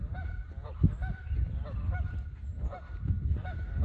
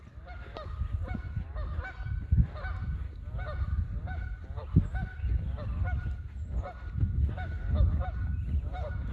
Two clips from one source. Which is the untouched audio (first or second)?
second